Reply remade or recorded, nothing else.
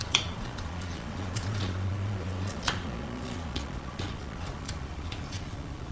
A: remade